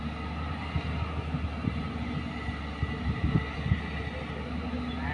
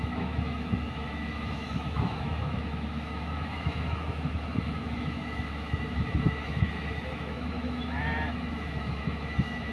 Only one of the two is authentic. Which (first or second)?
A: first